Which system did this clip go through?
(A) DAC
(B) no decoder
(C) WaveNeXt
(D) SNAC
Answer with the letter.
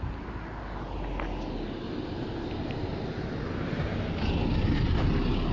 B